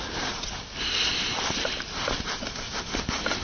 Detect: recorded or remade recorded